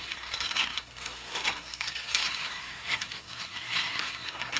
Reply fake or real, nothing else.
fake